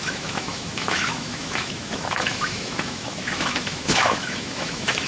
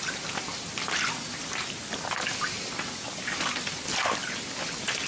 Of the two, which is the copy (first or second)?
first